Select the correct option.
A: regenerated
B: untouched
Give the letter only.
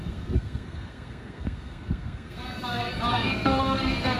A